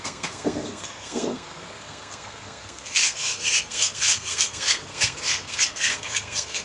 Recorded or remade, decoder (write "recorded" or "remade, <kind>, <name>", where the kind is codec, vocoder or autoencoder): remade, codec, SNAC